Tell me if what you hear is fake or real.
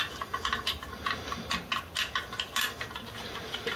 real